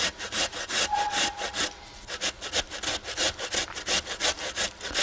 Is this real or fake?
real